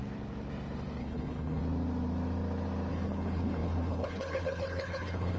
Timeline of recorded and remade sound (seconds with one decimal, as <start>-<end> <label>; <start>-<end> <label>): 0.0-1.0 recorded; 1.0-1.6 remade; 1.6-2.9 recorded; 2.9-5.4 remade

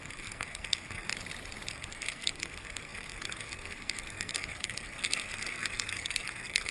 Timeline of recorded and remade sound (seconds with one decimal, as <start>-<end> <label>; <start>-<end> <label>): 0.0-1.1 remade; 1.1-1.7 recorded; 1.7-6.7 remade

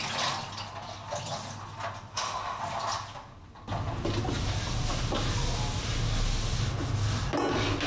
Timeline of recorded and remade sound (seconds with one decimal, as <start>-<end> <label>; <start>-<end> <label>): 0.0-2.1 recorded; 2.1-2.6 remade; 2.6-7.9 recorded

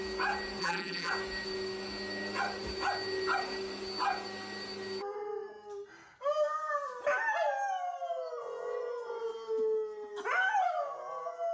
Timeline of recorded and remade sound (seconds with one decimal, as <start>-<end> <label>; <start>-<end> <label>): 0.0-0.6 recorded; 0.6-1.1 remade; 1.1-11.5 recorded